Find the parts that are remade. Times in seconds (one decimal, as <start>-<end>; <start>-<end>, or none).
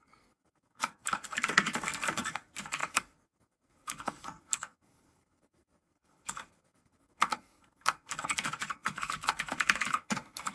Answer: 0.0-10.5